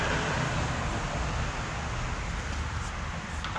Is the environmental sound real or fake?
real